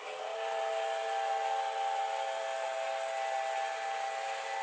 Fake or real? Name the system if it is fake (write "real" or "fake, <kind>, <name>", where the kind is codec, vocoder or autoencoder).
real